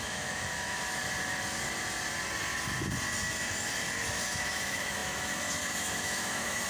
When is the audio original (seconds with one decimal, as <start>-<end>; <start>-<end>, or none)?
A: 1.0-4.1